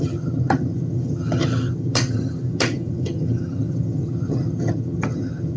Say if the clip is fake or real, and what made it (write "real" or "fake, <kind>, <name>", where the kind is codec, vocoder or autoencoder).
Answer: fake, vocoder, HiFi-GAN